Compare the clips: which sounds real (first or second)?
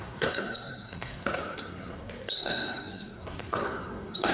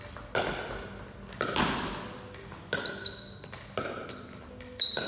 second